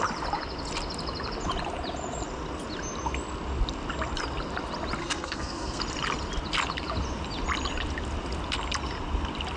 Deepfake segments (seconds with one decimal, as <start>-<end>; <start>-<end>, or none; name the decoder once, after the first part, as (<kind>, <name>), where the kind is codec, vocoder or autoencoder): 5.0-5.8 (codec, SNAC)